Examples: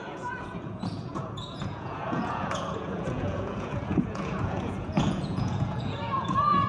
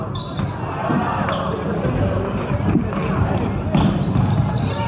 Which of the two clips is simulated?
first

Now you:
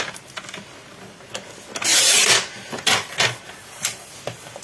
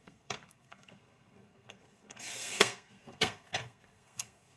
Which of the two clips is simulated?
second